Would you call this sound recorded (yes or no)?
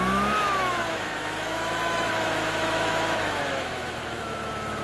no